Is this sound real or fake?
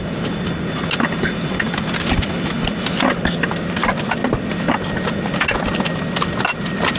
real